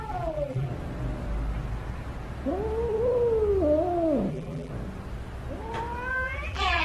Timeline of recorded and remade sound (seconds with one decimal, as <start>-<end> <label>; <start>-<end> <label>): 0.0-0.7 remade; 0.7-4.3 recorded; 4.3-4.7 remade; 4.7-6.1 recorded; 6.1-6.8 remade